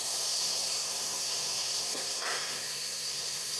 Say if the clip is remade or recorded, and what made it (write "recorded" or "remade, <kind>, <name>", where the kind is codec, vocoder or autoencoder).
remade, codec, SNAC